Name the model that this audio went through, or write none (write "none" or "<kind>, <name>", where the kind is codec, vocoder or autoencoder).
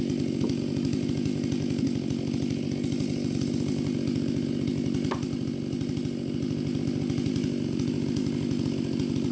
none